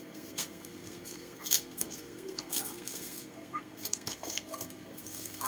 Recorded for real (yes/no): no